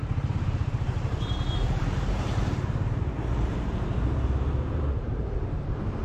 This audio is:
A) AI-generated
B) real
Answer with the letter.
A